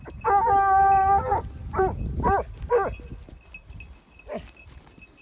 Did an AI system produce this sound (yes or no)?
no